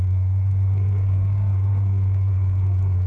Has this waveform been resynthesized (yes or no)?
yes